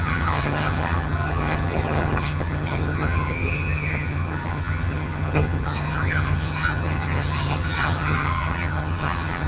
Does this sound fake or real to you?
fake